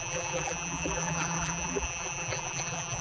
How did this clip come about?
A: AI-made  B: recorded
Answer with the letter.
A